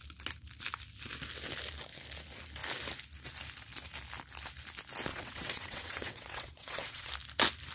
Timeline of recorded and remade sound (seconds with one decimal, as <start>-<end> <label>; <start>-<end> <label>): 0.0-5.1 recorded; 5.1-7.1 remade; 7.1-7.7 recorded